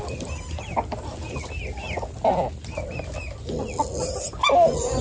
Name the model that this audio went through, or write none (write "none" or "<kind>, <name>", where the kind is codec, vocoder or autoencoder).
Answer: none